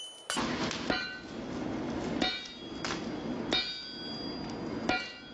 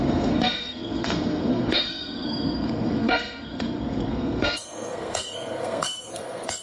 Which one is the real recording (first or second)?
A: first